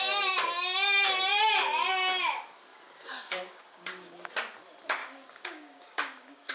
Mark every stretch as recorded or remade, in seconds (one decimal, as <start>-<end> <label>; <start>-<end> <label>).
0.0-2.7 recorded; 2.7-4.3 remade; 4.3-5.0 recorded; 5.0-6.5 remade